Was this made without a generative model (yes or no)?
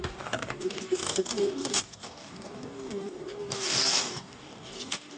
no